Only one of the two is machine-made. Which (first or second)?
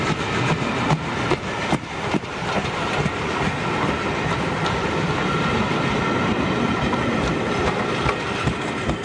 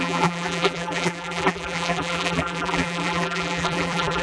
second